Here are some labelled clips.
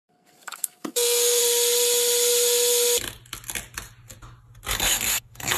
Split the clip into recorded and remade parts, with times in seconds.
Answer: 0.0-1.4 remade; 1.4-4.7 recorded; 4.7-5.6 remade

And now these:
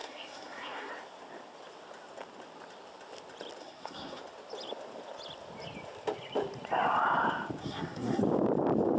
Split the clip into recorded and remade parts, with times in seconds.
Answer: 0.0-0.9 remade; 0.9-3.6 recorded; 3.6-4.2 remade; 4.2-7.6 recorded; 7.6-8.2 remade; 8.2-9.0 recorded

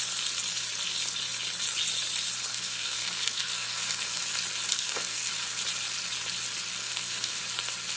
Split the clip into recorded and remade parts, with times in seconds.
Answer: 0.0-2.5 recorded; 2.5-4.2 remade; 4.2-4.7 recorded; 4.7-5.3 remade; 5.3-6.8 recorded; 6.8-7.4 remade; 7.4-8.0 recorded